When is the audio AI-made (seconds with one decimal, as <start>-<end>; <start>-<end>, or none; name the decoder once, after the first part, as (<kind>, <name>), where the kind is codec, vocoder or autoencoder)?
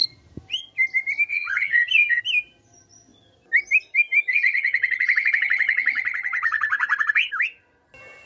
1.3-2.2 (vocoder, HiFi-GAN); 4.3-7.3